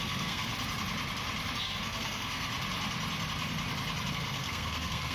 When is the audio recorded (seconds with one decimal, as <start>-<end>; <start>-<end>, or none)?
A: 0.5-1.6; 2.5-4.1